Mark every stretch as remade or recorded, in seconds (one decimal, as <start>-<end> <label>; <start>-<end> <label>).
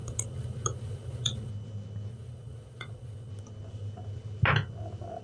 0.0-1.5 remade; 1.5-2.1 recorded; 2.1-3.3 remade; 3.3-5.2 recorded